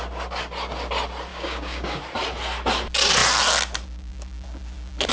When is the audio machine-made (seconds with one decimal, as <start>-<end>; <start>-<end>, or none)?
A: 1.3-2.0